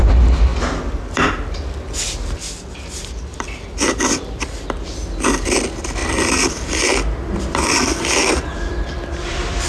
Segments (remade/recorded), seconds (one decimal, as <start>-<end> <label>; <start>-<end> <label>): 0.0-0.5 recorded; 0.5-1.3 remade; 1.3-3.3 recorded; 3.3-5.6 remade; 5.6-6.0 recorded; 6.0-9.7 remade